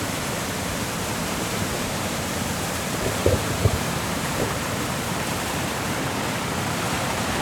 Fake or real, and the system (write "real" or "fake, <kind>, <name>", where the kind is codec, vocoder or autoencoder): fake, vocoder, BigVGAN v2